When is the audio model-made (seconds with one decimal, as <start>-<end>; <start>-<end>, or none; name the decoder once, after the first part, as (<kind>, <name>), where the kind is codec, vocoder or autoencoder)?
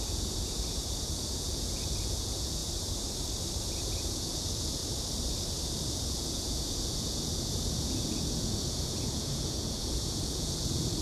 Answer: 0.0-2.6 (vocoder, Vocos); 3.6-4.8; 5.9-11.0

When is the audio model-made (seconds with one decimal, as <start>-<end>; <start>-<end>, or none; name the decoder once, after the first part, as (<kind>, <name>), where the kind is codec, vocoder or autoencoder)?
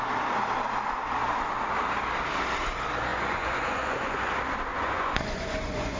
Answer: 3.1-4.3 (vocoder, Vocos); 4.7-6.0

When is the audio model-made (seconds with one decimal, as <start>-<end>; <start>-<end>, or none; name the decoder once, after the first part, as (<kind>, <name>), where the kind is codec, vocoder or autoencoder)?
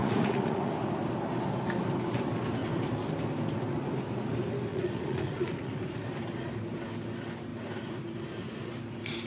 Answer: 0.0-0.7 (vocoder, Vocos); 4.7-5.7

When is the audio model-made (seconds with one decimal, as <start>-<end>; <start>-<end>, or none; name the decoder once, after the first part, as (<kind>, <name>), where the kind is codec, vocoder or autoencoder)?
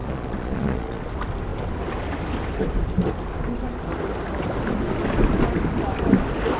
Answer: 0.0-1.0 (vocoder, Vocos)